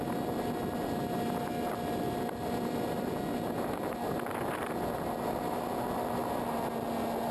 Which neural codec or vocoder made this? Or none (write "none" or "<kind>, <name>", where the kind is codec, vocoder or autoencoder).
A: none